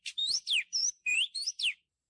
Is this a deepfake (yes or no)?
yes